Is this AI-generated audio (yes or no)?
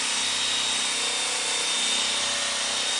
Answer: no